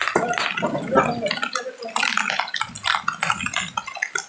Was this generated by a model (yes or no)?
no